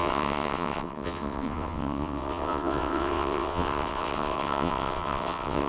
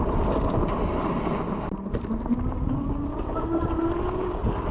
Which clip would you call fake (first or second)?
first